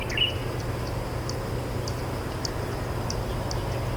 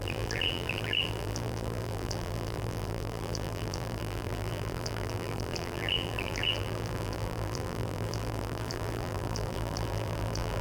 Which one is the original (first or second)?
first